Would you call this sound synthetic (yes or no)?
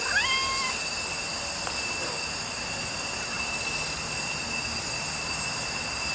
no